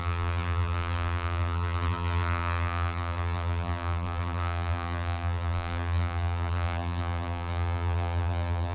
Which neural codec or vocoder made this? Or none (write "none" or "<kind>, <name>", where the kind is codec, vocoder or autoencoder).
vocoder, BigVGAN v2